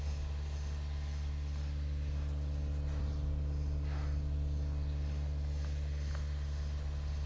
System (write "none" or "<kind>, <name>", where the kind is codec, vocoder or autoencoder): none